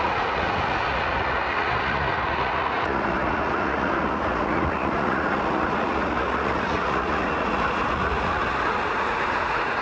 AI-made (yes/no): yes